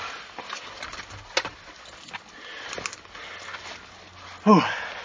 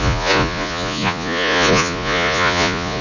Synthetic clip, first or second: second